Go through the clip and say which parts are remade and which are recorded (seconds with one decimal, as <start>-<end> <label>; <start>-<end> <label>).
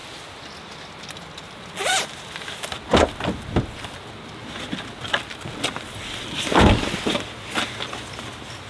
0.0-8.7 recorded